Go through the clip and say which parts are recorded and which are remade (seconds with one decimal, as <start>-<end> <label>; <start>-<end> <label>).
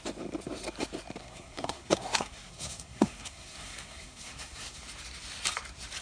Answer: 0.0-1.2 recorded; 1.2-4.8 remade; 4.8-6.0 recorded